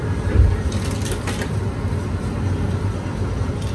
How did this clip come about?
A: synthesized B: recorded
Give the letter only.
B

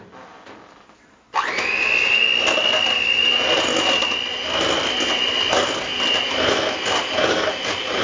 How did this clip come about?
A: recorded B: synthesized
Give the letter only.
A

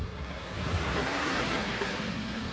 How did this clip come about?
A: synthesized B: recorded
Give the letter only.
A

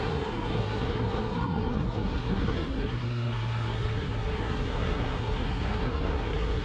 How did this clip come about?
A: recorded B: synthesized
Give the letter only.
B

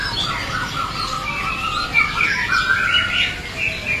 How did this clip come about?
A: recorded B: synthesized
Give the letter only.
A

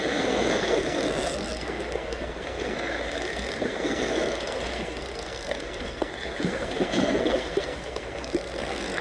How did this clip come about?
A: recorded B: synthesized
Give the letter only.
B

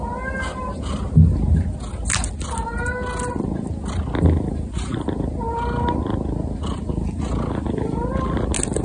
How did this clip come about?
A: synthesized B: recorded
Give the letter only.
B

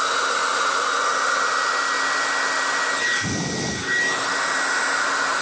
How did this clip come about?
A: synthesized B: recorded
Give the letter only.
B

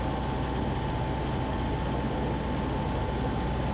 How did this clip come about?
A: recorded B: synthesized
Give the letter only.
A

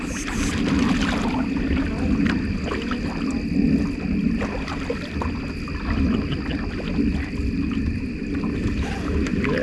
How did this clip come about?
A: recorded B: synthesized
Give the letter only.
A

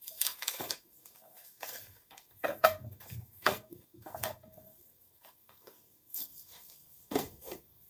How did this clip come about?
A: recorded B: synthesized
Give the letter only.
B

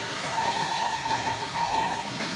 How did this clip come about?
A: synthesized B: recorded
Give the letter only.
A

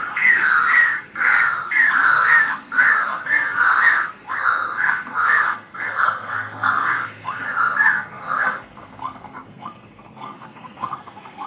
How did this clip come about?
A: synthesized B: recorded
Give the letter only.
A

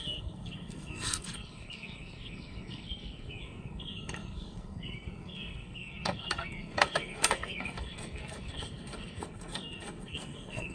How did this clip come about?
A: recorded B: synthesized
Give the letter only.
B